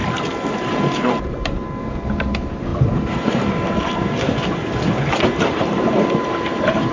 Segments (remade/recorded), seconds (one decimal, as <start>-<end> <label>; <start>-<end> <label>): 0.0-0.5 recorded; 0.5-6.9 remade